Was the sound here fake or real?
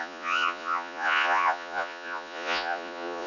fake